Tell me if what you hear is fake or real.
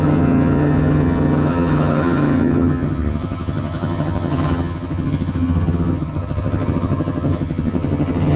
fake